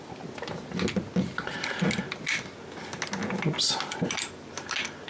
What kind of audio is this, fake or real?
real